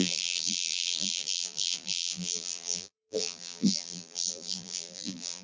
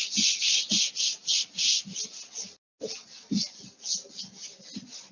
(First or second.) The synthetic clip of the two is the first